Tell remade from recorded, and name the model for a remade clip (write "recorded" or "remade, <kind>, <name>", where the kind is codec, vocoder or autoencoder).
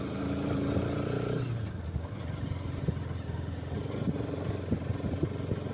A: recorded